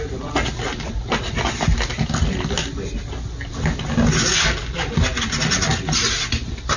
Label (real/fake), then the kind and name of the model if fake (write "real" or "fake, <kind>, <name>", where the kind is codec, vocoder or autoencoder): real